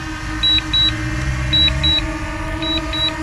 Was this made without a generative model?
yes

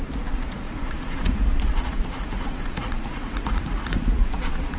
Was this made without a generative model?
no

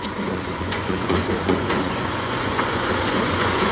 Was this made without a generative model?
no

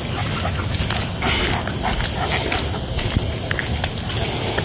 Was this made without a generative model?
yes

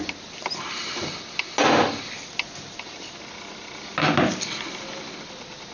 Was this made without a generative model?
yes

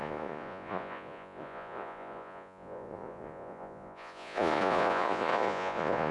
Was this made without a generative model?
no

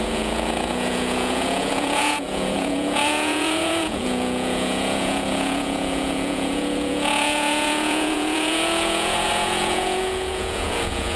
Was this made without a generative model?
no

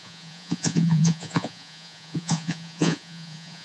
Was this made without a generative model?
no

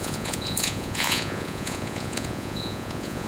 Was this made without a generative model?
no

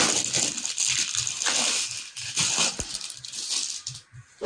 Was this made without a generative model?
yes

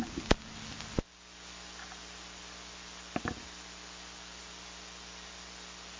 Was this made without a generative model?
yes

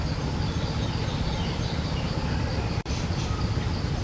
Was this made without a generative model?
yes